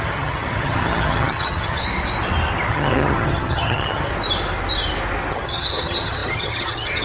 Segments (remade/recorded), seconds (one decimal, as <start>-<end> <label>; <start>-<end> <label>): 0.0-1.8 remade; 1.8-2.7 recorded; 2.7-4.1 remade; 4.1-5.3 recorded; 5.3-7.0 remade